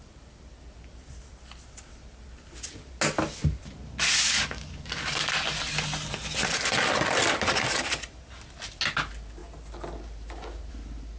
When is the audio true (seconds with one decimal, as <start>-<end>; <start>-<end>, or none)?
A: 0.0-4.2; 5.3-11.2